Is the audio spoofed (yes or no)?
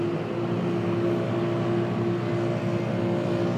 no